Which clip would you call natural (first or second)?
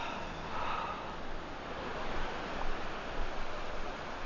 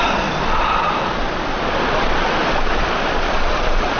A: first